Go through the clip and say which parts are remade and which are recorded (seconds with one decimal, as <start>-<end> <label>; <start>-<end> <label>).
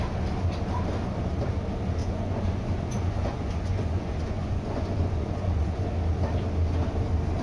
0.0-2.0 recorded; 2.0-5.9 remade; 5.9-7.4 recorded